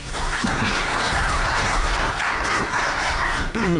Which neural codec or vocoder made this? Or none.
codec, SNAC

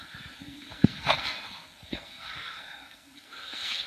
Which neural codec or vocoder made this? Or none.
codec, SNAC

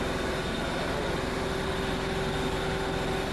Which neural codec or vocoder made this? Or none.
none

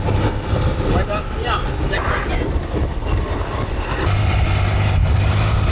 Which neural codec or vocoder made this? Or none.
none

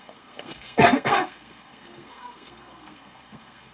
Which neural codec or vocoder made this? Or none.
codec, SNAC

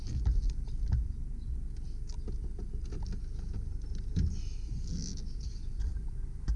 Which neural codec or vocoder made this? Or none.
none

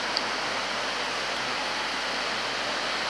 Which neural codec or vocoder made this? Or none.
none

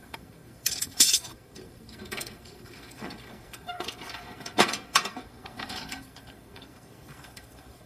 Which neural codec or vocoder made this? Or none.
codec, SNAC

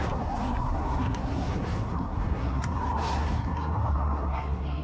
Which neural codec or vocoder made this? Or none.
codec, SNAC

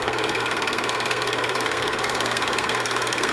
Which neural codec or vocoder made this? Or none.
codec, SNAC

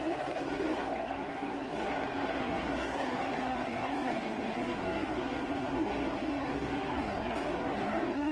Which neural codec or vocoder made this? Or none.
codec, SNAC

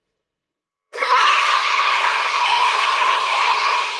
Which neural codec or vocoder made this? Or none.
codec, SNAC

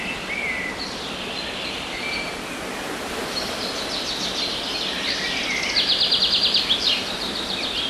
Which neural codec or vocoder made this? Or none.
none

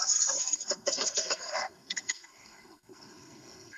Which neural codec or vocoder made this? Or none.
codec, SNAC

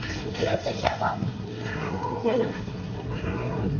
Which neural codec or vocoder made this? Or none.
codec, SNAC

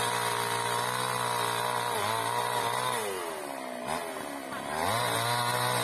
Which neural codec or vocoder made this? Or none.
none